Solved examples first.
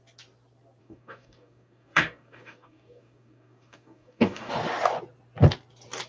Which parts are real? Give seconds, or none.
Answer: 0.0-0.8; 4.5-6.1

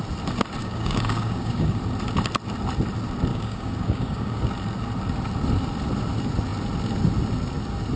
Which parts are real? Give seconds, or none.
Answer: 0.0-0.6; 1.8-3.3; 4.4-8.0

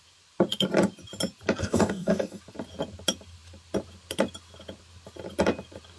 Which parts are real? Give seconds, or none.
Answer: 0.0-1.6; 2.4-6.0

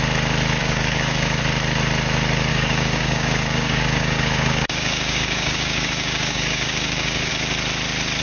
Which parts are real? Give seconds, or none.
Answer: 0.0-0.6; 1.4-2.5; 7.3-8.2

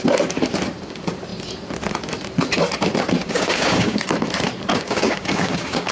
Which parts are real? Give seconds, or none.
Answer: 0.0-3.2; 4.0-4.7